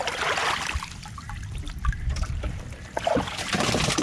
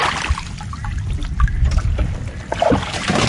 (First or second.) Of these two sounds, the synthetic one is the first